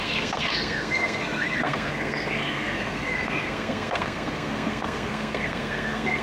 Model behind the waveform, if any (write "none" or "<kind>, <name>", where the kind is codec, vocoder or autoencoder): codec, SNAC